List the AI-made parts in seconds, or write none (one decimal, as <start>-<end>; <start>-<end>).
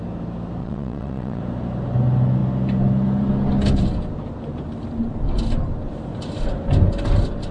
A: 0.6-1.4